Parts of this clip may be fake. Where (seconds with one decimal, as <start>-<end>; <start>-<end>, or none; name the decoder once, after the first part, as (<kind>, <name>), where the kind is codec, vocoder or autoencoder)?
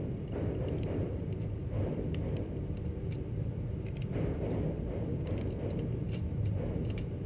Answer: 0.0-7.3 (vocoder, BigVGAN v2)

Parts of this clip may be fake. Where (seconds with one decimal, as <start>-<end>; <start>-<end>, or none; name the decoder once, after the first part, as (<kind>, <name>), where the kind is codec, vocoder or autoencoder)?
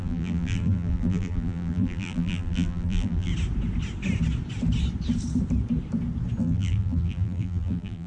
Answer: 0.0-3.3 (vocoder, BigVGAN v2); 6.4-8.1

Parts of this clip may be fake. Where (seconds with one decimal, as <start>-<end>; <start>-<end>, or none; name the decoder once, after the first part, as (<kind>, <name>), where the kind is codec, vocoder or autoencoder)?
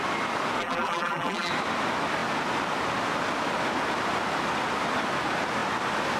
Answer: 0.6-1.5 (vocoder, BigVGAN v2)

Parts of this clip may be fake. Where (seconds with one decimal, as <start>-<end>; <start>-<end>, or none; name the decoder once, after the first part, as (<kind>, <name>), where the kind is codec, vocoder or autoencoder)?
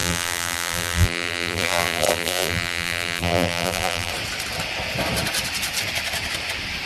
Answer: 0.0-4.1 (vocoder, BigVGAN v2)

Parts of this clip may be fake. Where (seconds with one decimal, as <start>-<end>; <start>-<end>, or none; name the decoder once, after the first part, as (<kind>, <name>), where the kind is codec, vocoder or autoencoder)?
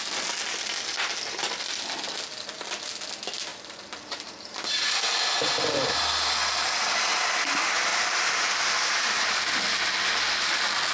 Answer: 3.5-6.0 (vocoder, BigVGAN v2); 7.9-9.4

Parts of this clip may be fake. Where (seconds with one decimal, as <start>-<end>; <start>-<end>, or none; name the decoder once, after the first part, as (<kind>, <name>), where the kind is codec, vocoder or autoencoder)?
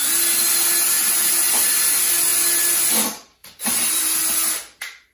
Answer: 1.0-1.5 (vocoder, BigVGAN v2); 3.4-4.0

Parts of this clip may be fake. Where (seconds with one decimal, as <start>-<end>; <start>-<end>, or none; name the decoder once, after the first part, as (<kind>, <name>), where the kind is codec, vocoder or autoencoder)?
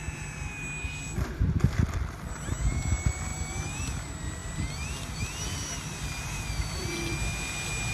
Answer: none